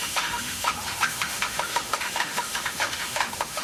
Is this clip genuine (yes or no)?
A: no